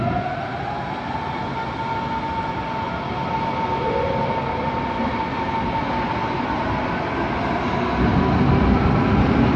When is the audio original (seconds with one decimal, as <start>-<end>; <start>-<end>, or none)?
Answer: 0.0-9.6